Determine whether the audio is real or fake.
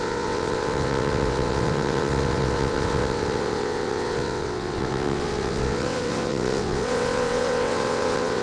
fake